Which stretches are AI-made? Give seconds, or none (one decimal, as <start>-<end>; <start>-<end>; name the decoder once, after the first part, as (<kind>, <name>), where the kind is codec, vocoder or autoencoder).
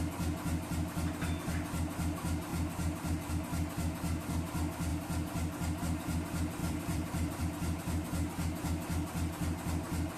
2.5-3.3 (vocoder, BigVGAN v2); 6.6-7.4